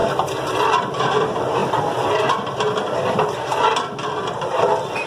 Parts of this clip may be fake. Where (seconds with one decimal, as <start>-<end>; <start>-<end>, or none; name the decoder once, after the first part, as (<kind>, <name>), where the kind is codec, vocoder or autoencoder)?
0.0-1.6 (vocoder, BigVGAN v2); 4.3-5.1